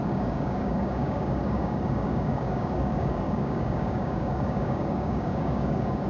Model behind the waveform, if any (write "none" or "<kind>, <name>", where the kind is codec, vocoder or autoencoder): codec, DAC